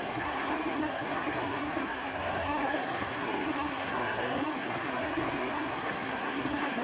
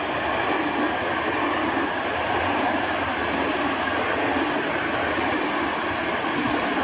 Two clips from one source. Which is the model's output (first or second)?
first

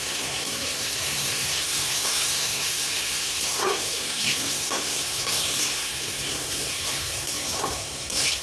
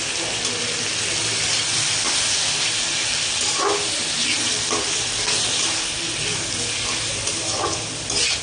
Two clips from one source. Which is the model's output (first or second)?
first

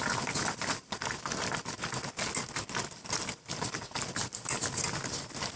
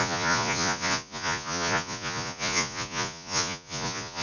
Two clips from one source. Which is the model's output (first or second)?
second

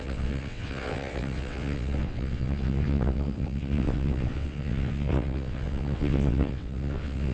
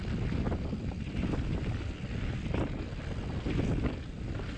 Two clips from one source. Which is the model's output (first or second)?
first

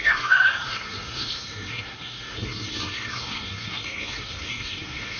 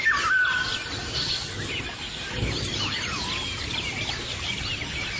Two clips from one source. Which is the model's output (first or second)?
first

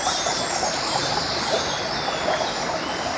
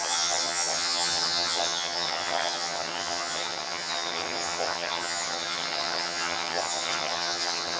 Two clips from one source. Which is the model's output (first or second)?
second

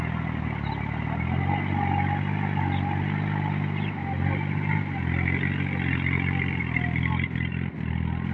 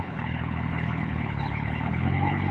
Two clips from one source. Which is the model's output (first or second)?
second